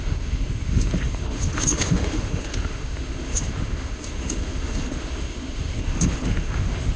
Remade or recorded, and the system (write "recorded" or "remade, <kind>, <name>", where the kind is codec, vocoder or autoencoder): remade, autoencoder, DAC-VAE